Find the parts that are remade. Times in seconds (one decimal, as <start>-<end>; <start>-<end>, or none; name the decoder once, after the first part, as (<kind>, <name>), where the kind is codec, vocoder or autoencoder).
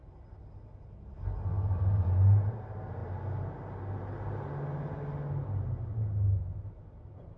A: none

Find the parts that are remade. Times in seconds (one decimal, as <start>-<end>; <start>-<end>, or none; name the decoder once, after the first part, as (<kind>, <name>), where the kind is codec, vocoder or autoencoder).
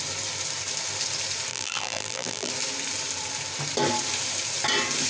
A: 1.5-2.5 (vocoder, BigVGAN v2)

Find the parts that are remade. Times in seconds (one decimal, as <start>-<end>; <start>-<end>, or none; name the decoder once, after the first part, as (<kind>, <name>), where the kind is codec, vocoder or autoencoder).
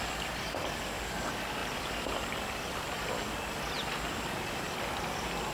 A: 1.6-3.2 (vocoder, BigVGAN v2)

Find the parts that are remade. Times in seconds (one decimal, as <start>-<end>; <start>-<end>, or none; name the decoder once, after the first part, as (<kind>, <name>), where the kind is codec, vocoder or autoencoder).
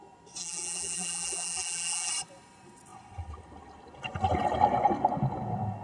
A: 0.4-2.1 (vocoder, BigVGAN v2)